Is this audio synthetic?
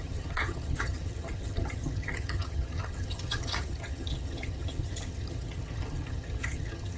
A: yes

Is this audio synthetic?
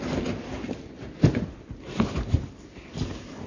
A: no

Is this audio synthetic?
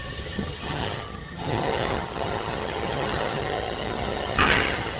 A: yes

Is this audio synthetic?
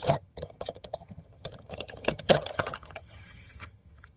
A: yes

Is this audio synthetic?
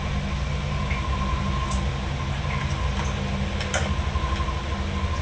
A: no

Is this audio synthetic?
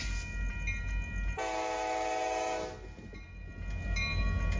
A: no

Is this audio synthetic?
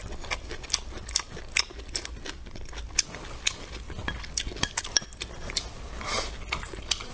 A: no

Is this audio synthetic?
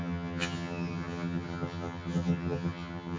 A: yes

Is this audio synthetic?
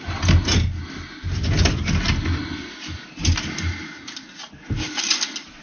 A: no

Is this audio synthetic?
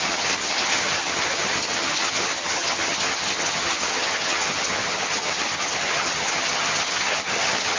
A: yes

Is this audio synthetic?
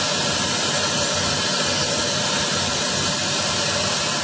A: no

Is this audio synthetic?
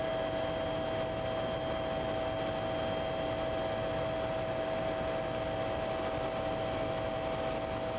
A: no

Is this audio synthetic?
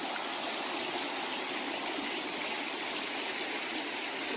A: no